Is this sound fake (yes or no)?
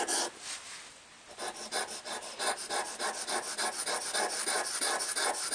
no